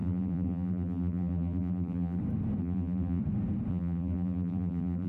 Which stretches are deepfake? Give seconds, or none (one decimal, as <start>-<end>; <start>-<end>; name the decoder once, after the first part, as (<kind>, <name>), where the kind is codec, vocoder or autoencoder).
0.0-2.2 (vocoder, BigVGAN v2); 2.6-3.2; 3.7-5.1